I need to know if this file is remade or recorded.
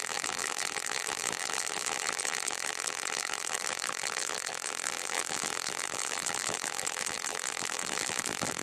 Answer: remade